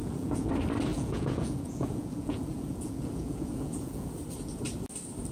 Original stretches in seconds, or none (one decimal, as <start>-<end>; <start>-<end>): 0.5-0.9; 4.1-5.3